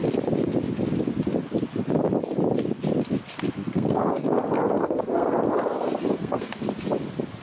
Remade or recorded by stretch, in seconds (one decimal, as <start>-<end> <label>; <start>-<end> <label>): 0.0-3.6 recorded; 3.6-6.6 remade; 6.6-7.4 recorded